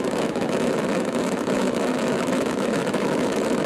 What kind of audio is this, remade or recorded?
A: remade